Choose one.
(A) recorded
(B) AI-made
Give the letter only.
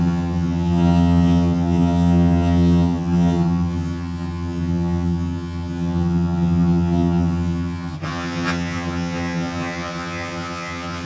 B